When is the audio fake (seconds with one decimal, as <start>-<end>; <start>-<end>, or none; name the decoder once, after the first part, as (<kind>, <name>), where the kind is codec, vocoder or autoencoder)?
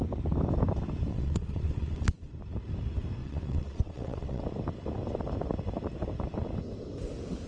1.1-2.3 (vocoder, WaveNeXt); 3.2-4.4